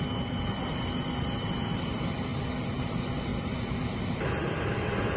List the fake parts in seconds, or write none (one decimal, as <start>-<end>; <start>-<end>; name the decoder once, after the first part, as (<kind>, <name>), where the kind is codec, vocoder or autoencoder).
none